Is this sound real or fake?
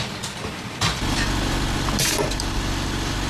real